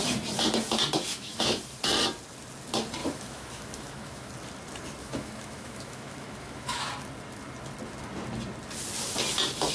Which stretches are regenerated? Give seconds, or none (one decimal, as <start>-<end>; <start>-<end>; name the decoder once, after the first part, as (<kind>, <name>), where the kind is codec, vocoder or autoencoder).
1.1-1.6 (autoencoder, DAC-VAE); 3.0-4.3; 5.0-6.9